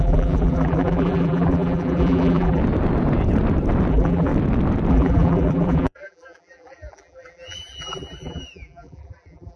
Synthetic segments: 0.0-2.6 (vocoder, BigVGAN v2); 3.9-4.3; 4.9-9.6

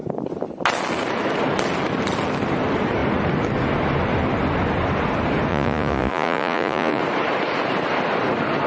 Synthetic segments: 5.5-7.0 (vocoder, Vocos)

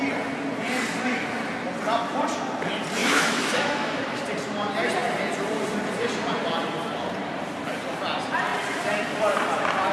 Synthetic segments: 3.0-4.2 (autoencoder, DAC-VAE)

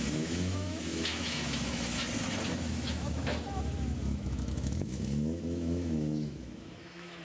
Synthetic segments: 0.0-2.0 (autoencoder, DAC-VAE); 2.5-7.2

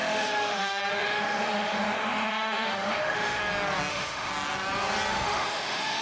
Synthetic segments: 0.0-3.4 (autoencoder, DAC-VAE); 3.9-4.3; 5.1-6.0

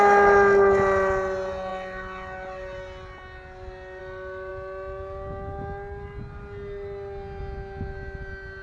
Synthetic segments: none

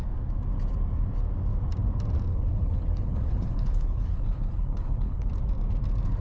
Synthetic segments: 2.3-5.3 (codec, HILCodec)